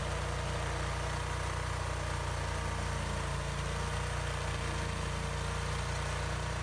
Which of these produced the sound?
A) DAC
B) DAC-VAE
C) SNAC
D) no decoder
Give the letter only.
D